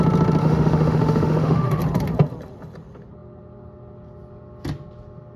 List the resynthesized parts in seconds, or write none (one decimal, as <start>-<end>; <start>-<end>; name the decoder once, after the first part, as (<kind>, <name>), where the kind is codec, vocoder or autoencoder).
0.4-1.8 (autoencoder, DAC-VAE)